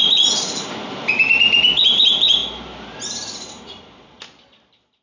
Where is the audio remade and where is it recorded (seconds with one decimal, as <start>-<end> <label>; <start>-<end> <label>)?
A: 0.0-5.0 recorded